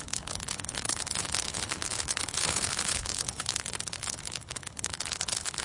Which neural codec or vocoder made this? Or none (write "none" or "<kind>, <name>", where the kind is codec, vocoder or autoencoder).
codec, HILCodec